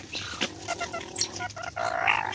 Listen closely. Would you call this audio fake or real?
real